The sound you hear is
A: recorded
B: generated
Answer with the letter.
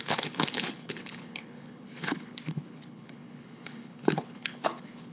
B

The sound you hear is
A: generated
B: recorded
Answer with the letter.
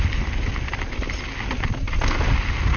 B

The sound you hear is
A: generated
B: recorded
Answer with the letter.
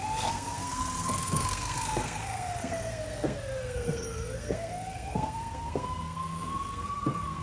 A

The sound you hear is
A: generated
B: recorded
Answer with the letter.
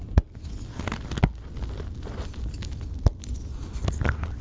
B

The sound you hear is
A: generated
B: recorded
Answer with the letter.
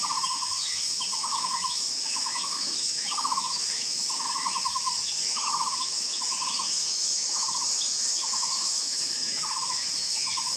A